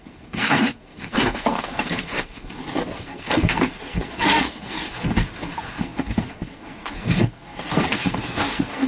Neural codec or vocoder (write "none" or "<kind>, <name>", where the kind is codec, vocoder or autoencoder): codec, SNAC